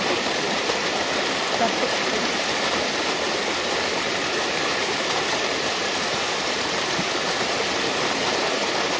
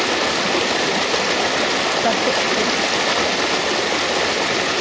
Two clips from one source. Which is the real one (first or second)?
second